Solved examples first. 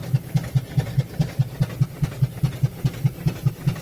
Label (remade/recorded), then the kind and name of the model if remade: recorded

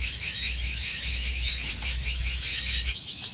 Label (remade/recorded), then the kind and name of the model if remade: remade, autoencoder, DAC-VAE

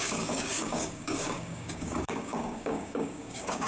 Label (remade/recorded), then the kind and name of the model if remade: remade, codec, DAC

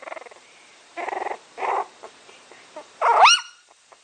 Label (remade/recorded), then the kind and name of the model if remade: remade, vocoder, BigVGAN v2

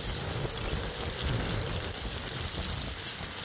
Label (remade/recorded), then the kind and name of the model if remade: recorded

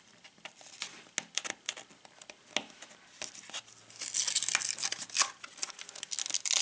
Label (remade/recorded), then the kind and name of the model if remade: recorded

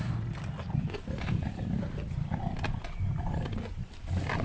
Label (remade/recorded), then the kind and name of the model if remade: recorded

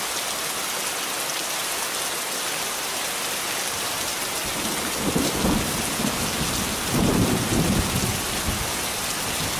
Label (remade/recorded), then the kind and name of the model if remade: recorded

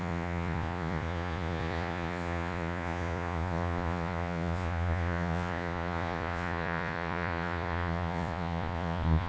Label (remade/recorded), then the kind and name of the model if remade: remade, vocoder, Vocos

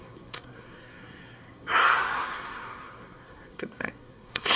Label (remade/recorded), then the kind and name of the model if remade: remade, codec, SNAC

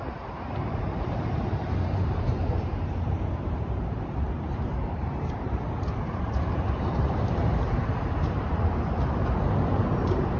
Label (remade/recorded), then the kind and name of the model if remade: remade, vocoder, BigVGAN v2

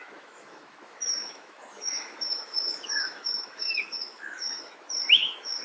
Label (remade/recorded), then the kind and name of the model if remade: remade, autoencoder, DAC-VAE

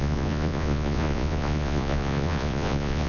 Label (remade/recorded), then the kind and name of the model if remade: remade, vocoder, Vocos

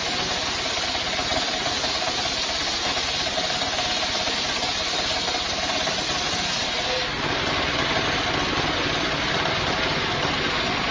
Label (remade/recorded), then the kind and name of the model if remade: recorded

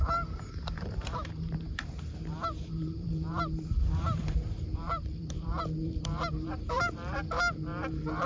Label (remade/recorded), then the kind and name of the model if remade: remade, vocoder, BigVGAN v2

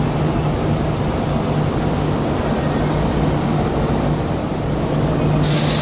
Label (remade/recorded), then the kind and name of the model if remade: recorded